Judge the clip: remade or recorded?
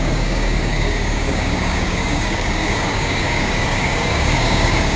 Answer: remade